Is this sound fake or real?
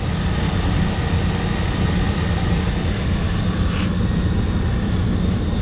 real